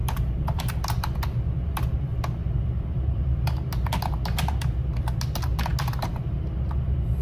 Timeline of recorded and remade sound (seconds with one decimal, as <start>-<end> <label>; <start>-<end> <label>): 0.0-0.6 remade; 0.6-7.2 recorded